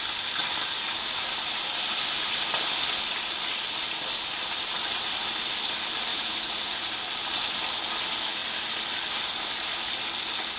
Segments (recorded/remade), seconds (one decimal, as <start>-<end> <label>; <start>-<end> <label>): 0.0-6.1 recorded; 6.1-6.9 remade; 6.9-10.6 recorded